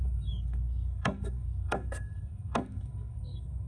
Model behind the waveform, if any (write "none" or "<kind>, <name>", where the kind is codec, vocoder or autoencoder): codec, SNAC